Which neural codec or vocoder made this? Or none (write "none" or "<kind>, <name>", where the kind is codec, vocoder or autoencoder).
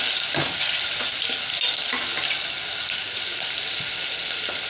none